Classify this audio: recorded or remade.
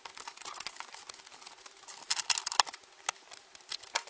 recorded